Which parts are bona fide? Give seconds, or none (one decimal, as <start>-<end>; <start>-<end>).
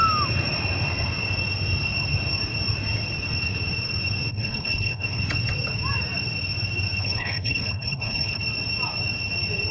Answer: 0.0-4.3; 5.2-7.0; 8.4-9.7